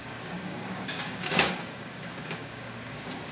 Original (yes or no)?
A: no